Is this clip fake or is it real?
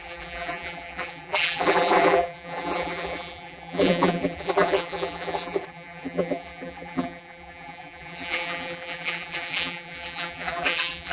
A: fake